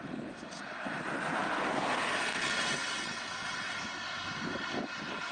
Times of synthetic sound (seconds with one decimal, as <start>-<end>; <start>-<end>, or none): 2.3-3.8